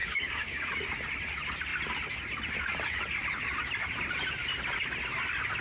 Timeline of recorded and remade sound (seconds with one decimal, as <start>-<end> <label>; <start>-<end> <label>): 0.0-0.7 remade; 0.7-5.6 recorded